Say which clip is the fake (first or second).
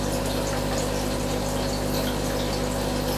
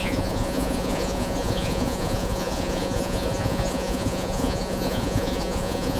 second